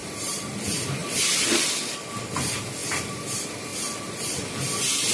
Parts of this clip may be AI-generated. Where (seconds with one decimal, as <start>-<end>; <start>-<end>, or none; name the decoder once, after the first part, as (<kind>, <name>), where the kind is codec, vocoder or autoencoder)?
0.0-0.6 (vocoder, BigVGAN v2); 1.0-1.7; 2.8-3.3; 3.7-4.5

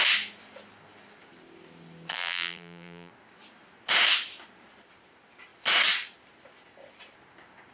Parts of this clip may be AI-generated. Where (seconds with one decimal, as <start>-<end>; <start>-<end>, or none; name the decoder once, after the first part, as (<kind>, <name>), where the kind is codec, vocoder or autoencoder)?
2.1-3.1 (vocoder, BigVGAN v2)

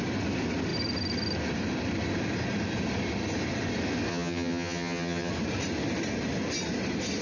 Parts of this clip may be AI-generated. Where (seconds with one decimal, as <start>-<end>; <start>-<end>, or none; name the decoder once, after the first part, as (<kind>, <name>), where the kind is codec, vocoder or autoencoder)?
4.1-5.3 (vocoder, HiFi-GAN)

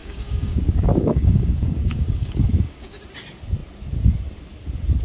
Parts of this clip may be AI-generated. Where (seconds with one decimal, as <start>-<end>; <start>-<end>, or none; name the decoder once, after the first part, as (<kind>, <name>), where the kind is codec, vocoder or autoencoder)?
0.0-3.0 (codec, DAC)